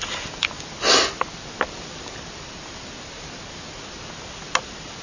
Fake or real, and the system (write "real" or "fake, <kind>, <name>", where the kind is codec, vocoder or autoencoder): real